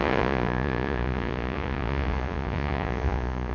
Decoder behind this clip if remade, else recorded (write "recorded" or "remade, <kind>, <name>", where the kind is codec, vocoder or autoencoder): remade, vocoder, Vocos